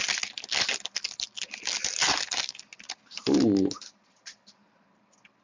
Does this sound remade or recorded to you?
recorded